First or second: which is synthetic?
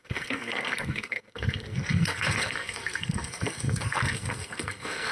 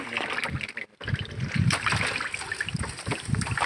first